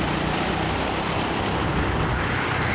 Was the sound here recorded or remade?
recorded